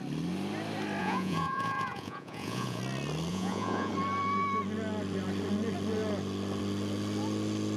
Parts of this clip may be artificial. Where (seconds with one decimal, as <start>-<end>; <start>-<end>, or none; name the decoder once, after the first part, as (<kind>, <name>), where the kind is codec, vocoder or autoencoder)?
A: 1.0-2.8 (vocoder, Vocos); 3.3-3.9